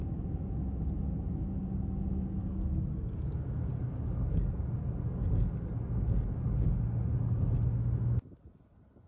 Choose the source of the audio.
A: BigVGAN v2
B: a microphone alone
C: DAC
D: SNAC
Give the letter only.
B